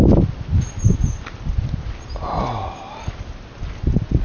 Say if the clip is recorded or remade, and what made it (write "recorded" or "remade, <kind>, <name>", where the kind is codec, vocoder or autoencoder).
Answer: recorded